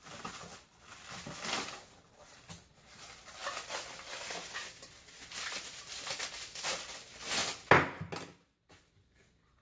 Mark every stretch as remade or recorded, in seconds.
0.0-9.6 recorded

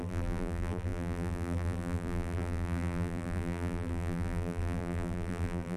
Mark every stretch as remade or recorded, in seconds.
0.0-5.8 remade

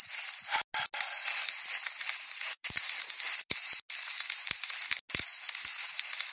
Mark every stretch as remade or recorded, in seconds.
0.0-1.2 recorded; 1.2-3.5 remade; 3.5-4.1 recorded; 4.1-4.8 remade; 4.8-6.3 recorded

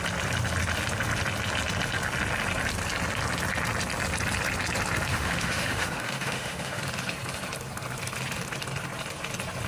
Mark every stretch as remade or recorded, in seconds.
0.0-5.1 recorded; 5.1-6.8 remade; 6.8-9.7 recorded

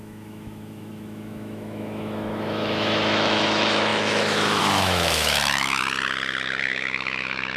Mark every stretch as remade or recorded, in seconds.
0.0-5.8 remade; 5.8-6.6 recorded; 6.6-7.6 remade

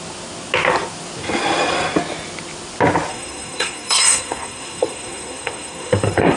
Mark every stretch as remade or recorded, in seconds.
0.0-3.1 recorded; 3.1-6.4 remade